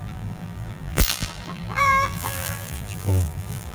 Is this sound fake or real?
fake